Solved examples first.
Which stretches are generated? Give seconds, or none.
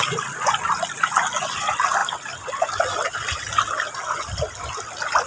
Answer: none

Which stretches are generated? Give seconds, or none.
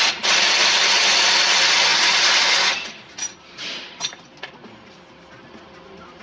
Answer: none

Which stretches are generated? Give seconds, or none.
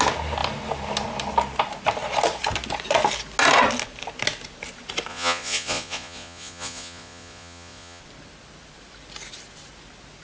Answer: 5.1-8.0 (vocoder, Vocos)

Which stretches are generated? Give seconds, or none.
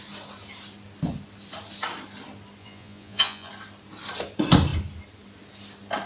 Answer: 2.6-3.5 (vocoder, Vocos)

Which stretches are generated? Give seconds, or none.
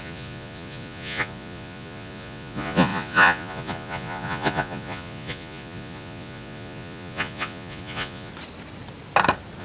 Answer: 0.0-8.3 (vocoder, Vocos)